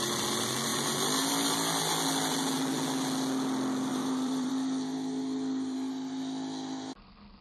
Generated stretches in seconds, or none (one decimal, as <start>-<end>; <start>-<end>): 3.9-4.5